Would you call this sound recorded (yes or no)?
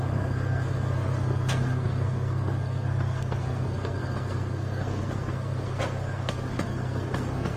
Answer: no